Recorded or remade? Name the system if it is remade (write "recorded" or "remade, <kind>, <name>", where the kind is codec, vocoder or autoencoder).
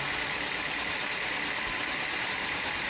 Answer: recorded